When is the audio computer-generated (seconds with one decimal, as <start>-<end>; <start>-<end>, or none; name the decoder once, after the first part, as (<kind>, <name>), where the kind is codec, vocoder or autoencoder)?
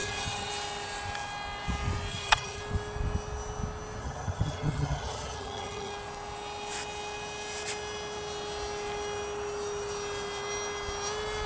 0.0-0.5 (vocoder, HiFi-GAN); 2.1-2.6; 4.0-5.9